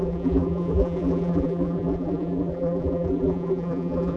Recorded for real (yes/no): no